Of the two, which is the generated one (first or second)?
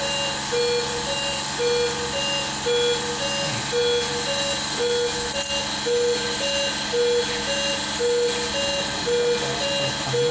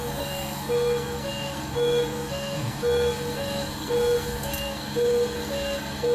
second